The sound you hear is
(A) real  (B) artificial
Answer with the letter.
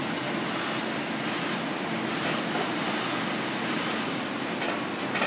A